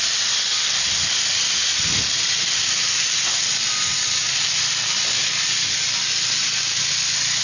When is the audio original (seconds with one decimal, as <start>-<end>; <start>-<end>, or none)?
0.0-7.4